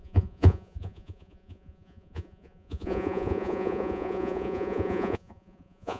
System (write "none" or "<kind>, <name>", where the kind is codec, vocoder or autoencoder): vocoder, Vocos